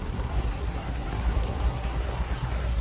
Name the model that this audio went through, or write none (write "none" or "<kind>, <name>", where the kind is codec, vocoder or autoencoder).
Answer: codec, SNAC